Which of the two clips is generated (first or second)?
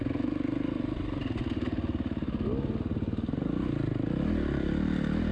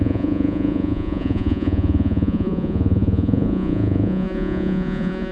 second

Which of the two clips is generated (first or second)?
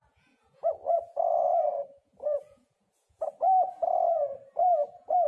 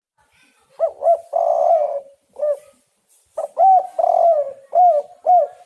first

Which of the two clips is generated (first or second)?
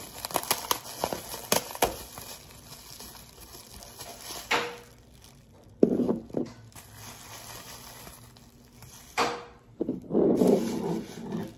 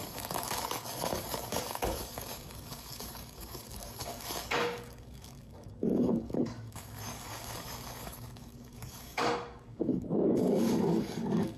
second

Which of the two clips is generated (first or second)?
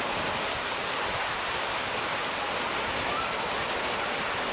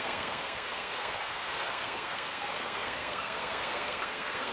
second